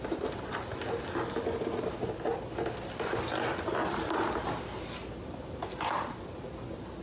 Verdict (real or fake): real